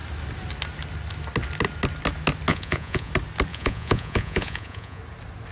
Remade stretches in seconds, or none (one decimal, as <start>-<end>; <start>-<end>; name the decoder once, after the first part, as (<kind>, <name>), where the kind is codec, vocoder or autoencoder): 2.5-3.1 (vocoder, Vocos); 3.5-5.0